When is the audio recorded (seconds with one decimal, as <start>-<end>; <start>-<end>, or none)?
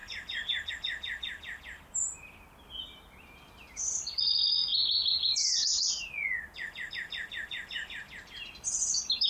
0.0-9.3